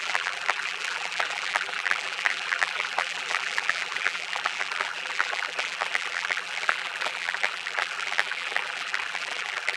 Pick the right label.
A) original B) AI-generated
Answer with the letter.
B